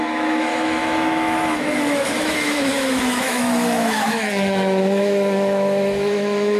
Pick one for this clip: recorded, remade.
remade